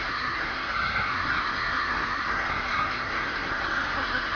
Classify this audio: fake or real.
fake